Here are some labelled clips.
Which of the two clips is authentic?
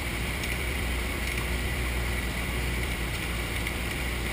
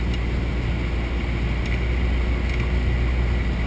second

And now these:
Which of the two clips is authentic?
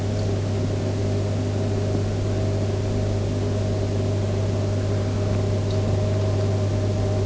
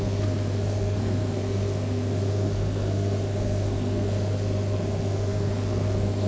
first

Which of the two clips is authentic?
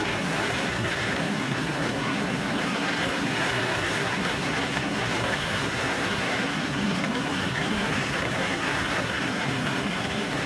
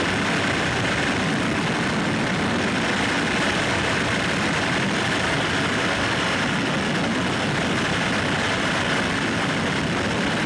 second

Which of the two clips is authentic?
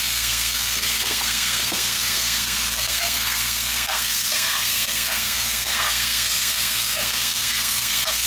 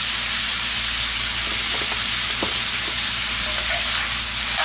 second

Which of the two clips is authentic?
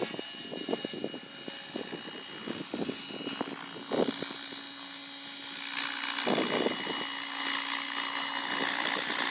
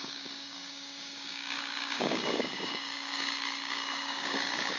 first